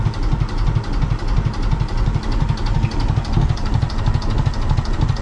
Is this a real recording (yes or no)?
yes